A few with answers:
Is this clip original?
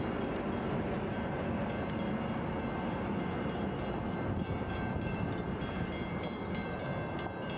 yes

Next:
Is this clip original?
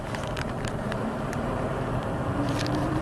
no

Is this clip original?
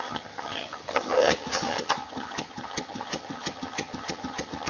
no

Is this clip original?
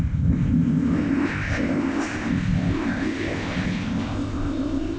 no